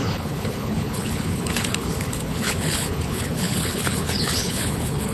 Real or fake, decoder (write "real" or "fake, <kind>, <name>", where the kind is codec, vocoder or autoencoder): fake, codec, HILCodec